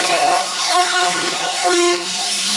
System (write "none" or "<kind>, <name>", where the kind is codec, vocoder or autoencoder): codec, SNAC